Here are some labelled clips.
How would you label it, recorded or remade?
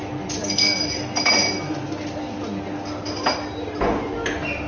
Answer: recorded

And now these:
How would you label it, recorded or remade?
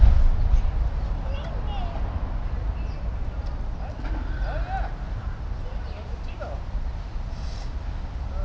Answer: recorded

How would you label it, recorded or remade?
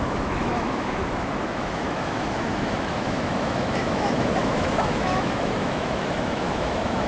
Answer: remade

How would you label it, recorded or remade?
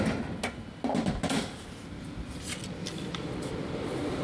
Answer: recorded